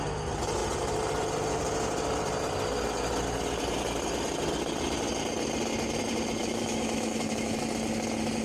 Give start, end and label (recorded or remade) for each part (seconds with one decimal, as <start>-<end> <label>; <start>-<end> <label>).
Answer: 0.0-6.4 recorded; 6.4-7.6 remade; 7.6-8.4 recorded